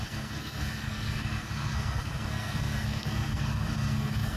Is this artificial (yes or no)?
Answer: yes